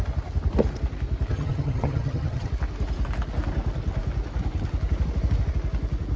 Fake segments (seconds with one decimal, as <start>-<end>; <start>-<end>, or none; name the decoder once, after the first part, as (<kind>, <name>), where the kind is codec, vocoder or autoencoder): 1.3-2.5 (vocoder, HiFi-GAN)